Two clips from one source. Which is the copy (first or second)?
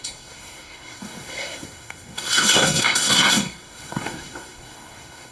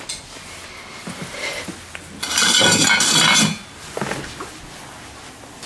first